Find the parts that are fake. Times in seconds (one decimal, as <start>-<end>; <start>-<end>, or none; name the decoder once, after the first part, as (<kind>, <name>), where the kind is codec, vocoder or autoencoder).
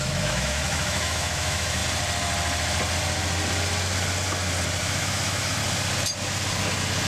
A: 0.0-1.8 (autoencoder, DAC-VAE); 4.8-5.6